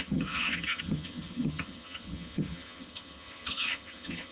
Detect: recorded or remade remade